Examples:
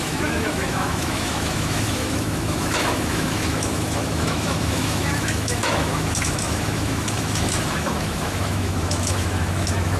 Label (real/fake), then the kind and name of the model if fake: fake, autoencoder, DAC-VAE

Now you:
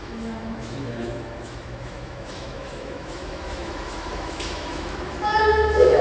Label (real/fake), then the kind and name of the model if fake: fake, autoencoder, DAC-VAE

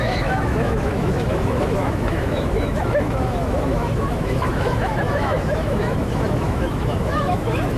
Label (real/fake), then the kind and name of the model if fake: fake, autoencoder, DAC-VAE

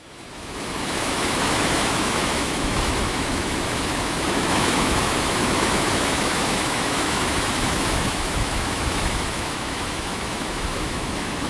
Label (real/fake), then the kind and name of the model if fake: fake, autoencoder, DAC-VAE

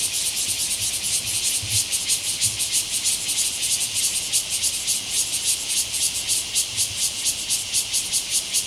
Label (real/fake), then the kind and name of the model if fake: real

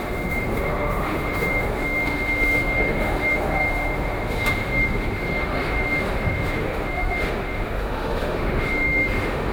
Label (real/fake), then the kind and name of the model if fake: fake, autoencoder, DAC-VAE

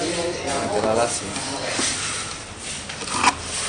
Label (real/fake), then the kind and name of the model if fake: real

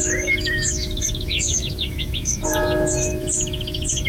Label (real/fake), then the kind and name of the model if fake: fake, autoencoder, DAC-VAE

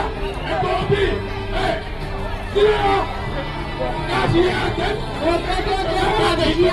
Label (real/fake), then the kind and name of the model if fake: real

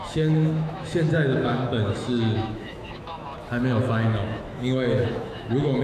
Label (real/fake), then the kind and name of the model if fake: fake, autoencoder, DAC-VAE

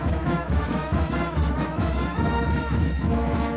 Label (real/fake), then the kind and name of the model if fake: fake, autoencoder, DAC-VAE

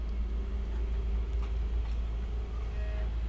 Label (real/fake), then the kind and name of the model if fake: real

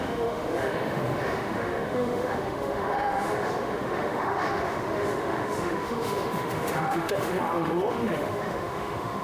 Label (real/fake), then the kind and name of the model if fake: fake, autoencoder, DAC-VAE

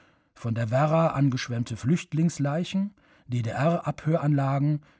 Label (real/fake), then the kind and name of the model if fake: real